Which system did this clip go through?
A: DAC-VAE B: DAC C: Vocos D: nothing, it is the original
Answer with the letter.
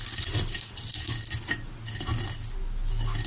D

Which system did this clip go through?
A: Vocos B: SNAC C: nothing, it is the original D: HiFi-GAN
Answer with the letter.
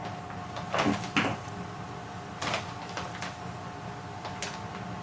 C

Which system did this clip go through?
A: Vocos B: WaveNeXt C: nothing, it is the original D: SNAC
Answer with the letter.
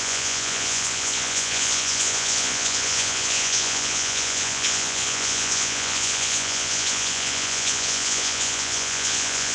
A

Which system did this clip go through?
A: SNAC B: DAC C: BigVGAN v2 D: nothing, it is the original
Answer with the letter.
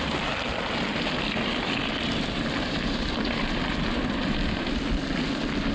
D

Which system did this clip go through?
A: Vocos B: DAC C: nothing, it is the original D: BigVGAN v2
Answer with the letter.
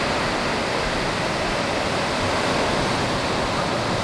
C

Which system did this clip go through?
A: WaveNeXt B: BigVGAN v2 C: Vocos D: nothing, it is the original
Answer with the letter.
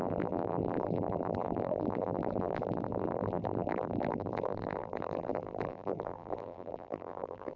B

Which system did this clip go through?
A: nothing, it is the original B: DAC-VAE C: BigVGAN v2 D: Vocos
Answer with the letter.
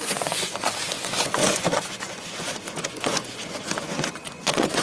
D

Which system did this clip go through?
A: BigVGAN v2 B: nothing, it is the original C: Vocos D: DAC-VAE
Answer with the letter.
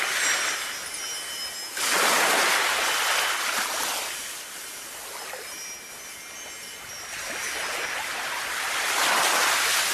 B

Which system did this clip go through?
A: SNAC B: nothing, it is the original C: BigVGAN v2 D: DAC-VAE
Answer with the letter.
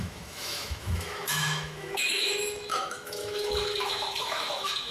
D